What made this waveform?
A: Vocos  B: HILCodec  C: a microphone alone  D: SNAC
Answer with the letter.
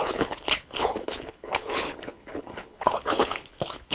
B